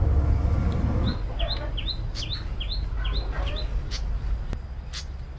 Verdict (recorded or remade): recorded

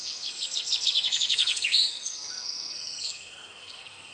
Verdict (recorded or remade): remade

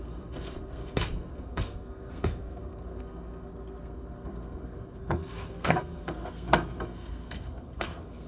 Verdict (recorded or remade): remade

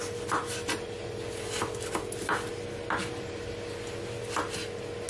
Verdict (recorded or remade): recorded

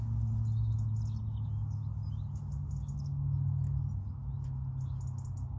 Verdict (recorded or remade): recorded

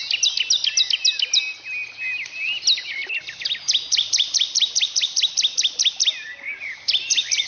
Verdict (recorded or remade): recorded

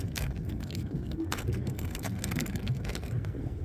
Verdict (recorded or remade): remade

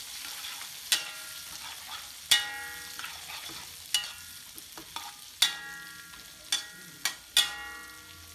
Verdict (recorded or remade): recorded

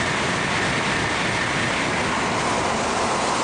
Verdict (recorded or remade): recorded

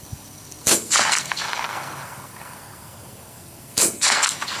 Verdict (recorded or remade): remade